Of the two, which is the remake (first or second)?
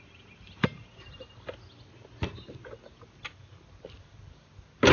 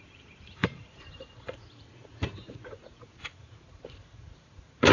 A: second